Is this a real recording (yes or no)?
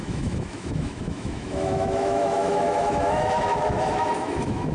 no